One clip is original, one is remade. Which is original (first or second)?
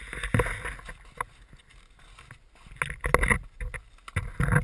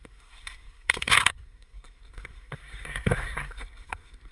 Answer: first